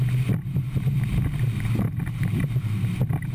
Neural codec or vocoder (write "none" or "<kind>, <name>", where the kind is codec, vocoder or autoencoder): none